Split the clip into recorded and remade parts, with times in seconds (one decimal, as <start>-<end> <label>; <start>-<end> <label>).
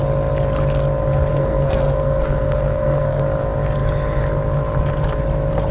0.0-1.3 recorded; 1.3-3.2 remade; 3.2-5.7 recorded